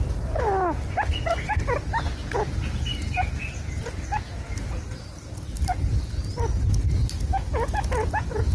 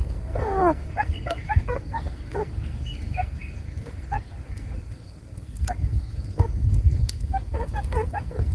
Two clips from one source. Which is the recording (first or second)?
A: first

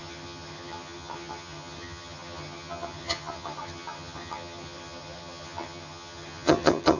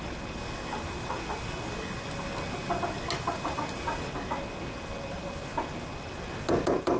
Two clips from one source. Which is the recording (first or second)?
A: second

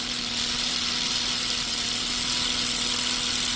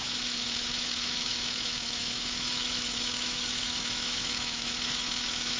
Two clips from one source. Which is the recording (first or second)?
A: first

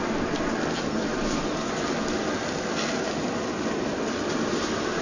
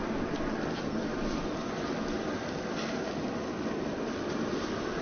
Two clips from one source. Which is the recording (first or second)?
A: first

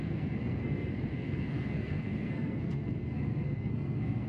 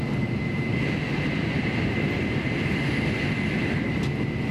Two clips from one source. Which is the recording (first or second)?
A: second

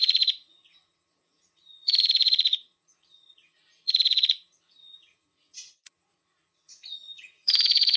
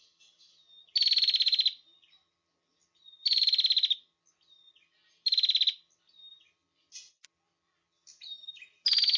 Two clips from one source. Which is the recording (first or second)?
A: second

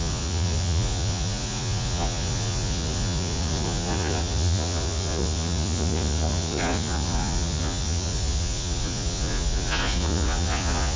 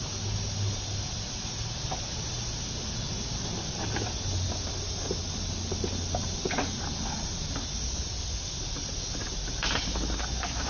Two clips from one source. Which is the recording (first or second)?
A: second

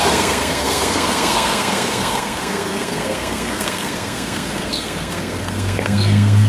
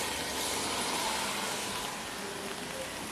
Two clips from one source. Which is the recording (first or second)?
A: second